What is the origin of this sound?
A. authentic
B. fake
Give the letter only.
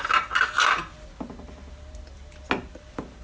A